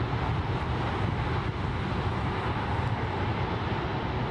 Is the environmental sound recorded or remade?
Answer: recorded